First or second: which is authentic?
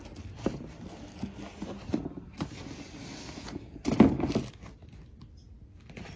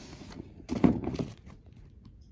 first